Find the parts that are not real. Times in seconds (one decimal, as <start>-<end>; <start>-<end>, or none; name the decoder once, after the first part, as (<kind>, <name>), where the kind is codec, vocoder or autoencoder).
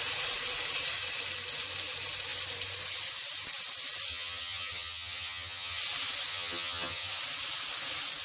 4.1-5.8 (vocoder, HiFi-GAN); 6.3-7.2